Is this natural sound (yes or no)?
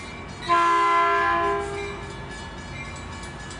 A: yes